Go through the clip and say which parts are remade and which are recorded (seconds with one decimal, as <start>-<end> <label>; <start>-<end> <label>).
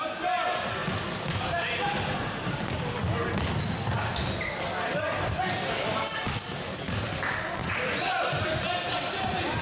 0.0-7.6 recorded; 7.6-8.2 remade; 8.2-9.6 recorded